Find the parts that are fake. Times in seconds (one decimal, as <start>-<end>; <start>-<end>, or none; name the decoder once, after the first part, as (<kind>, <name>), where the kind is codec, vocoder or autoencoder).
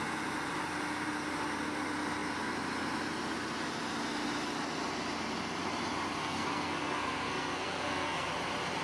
6.2-8.3 (codec, SNAC)